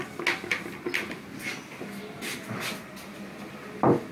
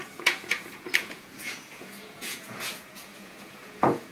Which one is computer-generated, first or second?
second